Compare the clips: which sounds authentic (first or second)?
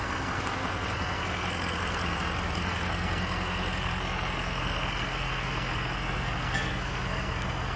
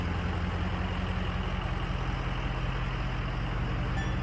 second